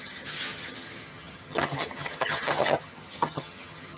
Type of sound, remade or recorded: remade